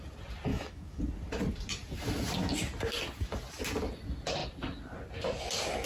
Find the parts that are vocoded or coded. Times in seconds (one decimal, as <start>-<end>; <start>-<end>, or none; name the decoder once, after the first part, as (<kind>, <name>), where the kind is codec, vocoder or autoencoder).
0.5-1.0 (autoencoder, DAC-VAE)